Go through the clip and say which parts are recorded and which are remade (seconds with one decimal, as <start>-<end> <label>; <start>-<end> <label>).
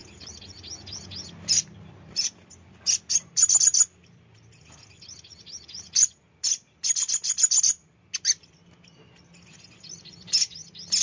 0.0-11.0 recorded